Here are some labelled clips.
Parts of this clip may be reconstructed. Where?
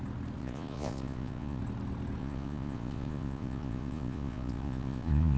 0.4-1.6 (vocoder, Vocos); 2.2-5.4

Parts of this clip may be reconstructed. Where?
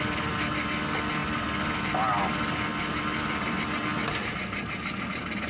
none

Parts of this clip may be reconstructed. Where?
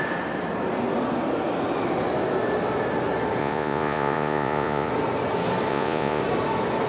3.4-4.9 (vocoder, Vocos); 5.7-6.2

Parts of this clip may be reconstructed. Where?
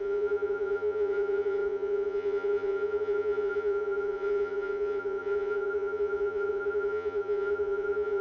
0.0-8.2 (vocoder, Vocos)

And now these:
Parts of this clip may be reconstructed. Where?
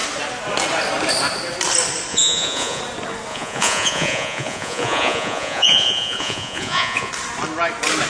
2.1-2.8 (vocoder, Vocos); 3.3-7.1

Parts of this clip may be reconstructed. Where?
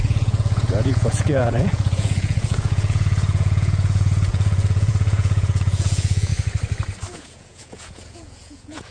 0.0-6.3 (vocoder, Vocos); 7.1-8.9